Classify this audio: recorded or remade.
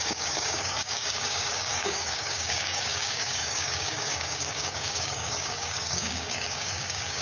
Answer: remade